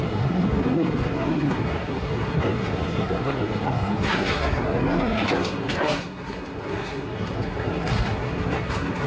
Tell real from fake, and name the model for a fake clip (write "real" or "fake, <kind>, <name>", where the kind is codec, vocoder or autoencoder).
fake, codec, SNAC